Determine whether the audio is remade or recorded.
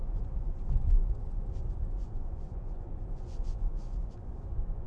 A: remade